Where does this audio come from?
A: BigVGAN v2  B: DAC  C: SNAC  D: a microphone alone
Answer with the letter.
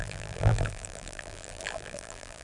A